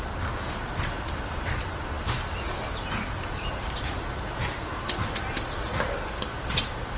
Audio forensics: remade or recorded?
recorded